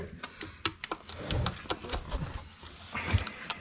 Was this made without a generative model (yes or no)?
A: yes